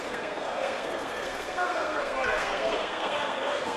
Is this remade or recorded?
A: remade